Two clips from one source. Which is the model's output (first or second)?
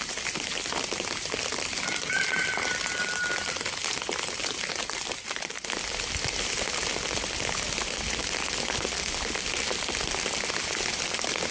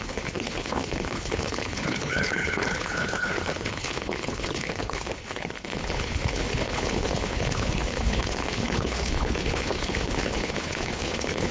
second